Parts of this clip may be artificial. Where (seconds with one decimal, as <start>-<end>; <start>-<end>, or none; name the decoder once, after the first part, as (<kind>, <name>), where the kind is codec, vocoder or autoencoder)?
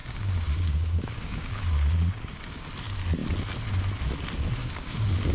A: 0.0-2.6 (codec, DAC); 4.6-5.3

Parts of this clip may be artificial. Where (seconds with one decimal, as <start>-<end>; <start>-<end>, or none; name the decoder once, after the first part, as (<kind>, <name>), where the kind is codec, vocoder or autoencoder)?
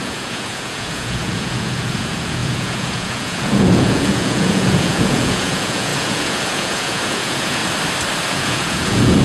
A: 0.0-7.6 (vocoder, Vocos); 8.3-9.2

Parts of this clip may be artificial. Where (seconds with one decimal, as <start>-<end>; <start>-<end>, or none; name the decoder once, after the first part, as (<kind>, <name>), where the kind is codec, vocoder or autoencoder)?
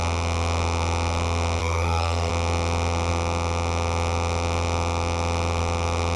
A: 1.6-2.3 (codec, SNAC)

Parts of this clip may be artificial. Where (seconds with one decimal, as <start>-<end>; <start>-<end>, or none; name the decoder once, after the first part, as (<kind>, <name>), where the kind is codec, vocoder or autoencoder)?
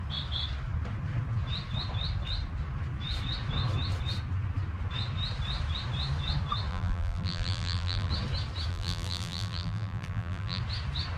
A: 6.7-8.1 (vocoder, BigVGAN v2); 8.7-10.6